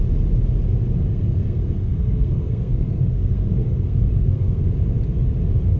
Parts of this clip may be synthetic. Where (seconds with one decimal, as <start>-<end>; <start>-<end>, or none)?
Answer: 1.1-4.6